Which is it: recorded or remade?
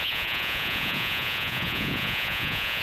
remade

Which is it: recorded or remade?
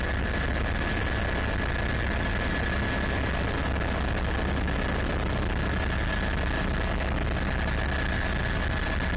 recorded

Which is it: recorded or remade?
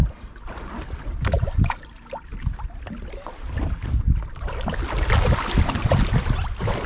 recorded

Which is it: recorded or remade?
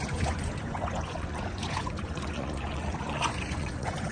remade